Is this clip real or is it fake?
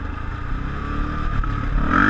real